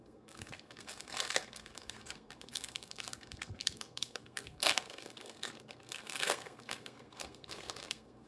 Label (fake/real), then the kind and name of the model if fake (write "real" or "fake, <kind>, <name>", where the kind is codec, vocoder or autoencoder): fake, codec, SNAC